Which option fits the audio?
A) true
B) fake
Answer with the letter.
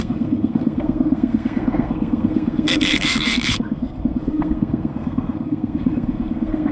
B